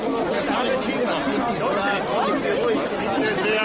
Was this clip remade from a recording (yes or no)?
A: no